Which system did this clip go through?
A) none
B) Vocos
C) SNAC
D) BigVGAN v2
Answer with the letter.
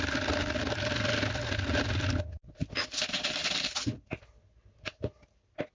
A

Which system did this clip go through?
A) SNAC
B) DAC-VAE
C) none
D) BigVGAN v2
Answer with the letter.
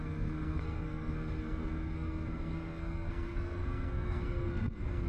A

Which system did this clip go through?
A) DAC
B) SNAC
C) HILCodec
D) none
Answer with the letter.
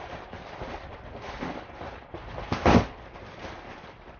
D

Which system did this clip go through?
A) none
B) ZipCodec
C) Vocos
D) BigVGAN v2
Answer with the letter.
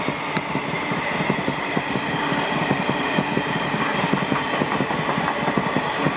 A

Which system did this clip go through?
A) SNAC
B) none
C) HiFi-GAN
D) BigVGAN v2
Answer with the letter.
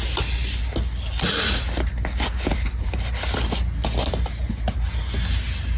B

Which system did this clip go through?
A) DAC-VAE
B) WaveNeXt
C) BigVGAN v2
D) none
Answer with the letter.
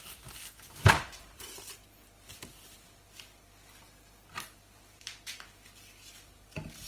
D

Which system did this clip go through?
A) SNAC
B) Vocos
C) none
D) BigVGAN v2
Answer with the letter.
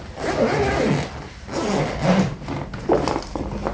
C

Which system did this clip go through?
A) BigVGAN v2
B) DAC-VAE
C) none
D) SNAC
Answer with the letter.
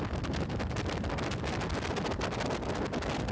C